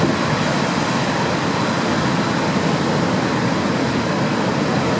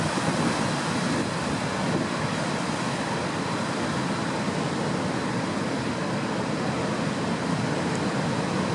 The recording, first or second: first